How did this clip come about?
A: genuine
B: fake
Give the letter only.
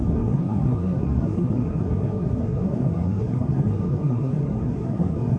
B